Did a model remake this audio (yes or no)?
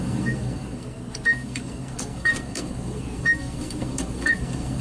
yes